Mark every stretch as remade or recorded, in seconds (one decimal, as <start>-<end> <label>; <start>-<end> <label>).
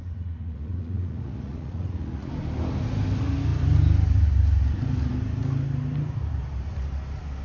0.0-2.3 remade; 2.3-7.4 recorded